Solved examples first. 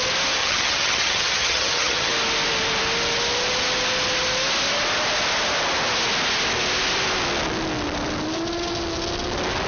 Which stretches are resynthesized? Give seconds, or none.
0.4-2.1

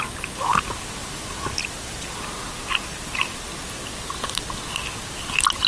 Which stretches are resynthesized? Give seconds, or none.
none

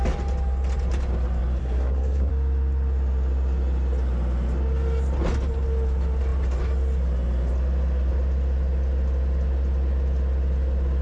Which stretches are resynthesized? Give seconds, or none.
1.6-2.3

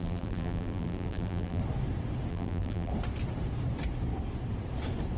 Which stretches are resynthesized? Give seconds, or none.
0.0-1.6; 2.3-2.9